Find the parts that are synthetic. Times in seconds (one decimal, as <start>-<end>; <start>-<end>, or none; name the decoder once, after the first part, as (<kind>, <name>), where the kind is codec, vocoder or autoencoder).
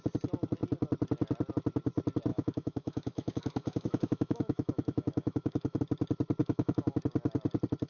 2.3-5.8 (autoencoder, DAC-VAE); 6.4-7.0